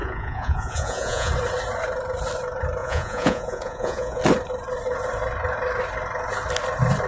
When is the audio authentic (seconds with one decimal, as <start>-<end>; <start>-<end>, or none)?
1.3-2.8; 4.2-7.1